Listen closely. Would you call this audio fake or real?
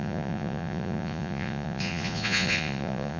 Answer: fake